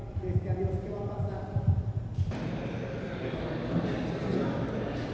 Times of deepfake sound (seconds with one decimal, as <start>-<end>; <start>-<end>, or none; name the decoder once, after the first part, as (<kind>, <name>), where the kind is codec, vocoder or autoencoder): none